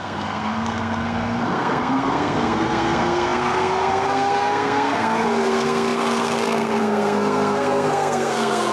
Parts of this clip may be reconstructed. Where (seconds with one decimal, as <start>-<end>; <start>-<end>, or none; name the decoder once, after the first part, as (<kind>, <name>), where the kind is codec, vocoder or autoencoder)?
0.0-8.7 (codec, SNAC)